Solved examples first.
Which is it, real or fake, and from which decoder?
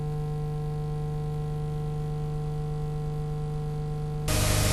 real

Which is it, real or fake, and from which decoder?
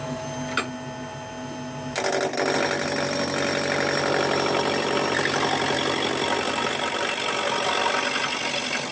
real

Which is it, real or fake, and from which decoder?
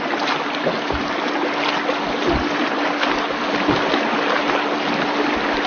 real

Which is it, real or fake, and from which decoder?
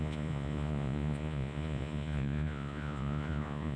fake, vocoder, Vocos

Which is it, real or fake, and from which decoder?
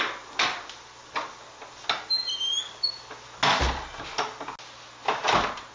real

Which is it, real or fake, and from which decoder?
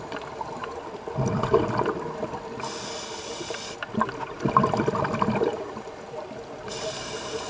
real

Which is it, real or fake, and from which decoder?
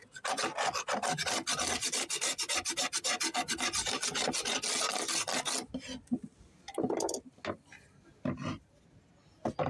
real